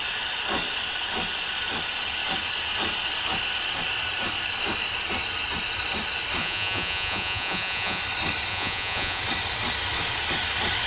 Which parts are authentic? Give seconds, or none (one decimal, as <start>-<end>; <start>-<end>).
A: 0.0-6.4; 8.0-8.5; 9.2-10.9